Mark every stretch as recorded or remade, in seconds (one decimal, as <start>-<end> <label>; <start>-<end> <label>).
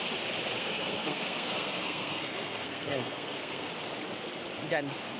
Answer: 0.0-0.6 recorded; 0.6-3.7 remade; 3.7-5.2 recorded